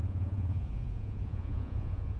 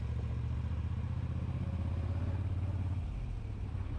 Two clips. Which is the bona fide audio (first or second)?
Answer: second